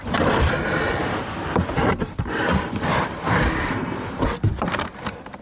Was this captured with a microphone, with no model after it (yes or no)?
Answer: no